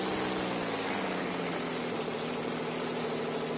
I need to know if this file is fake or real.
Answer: real